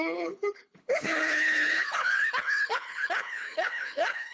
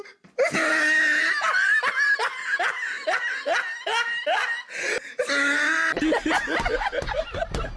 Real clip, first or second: second